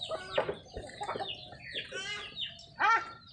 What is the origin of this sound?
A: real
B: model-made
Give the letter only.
A